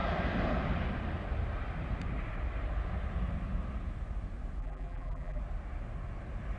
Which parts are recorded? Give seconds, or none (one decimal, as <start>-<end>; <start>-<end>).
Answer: 0.0-4.6; 5.4-6.6